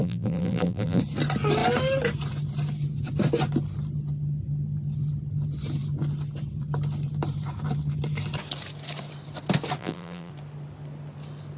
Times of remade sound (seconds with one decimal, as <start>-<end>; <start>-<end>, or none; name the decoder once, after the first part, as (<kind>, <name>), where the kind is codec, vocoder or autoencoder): 0.0-1.0 (vocoder, BigVGAN v2); 9.8-10.3